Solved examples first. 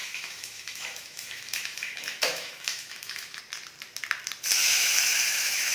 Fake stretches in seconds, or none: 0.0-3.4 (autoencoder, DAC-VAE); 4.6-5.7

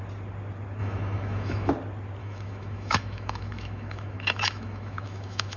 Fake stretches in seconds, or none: 0.8-1.7 (autoencoder, DAC-VAE); 2.2-5.6

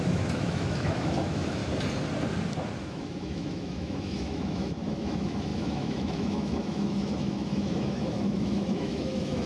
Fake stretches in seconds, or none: 0.0-1.6 (autoencoder, DAC-VAE); 2.8-9.5

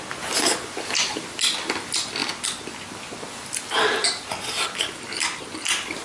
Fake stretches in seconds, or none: none